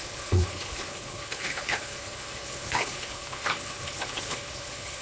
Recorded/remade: remade